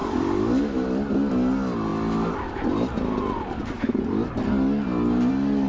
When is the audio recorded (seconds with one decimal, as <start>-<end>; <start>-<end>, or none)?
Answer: 0.0-5.7